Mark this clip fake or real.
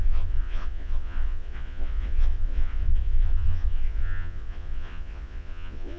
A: fake